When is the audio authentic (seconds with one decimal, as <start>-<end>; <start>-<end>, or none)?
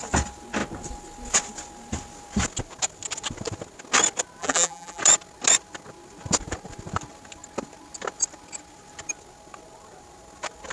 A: 0.0-4.4; 5.0-10.7